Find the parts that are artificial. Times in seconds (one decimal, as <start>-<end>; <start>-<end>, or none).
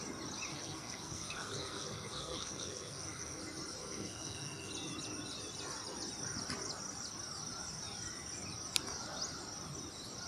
0.5-3.4; 3.8-4.7